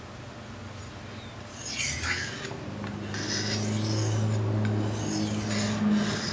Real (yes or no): yes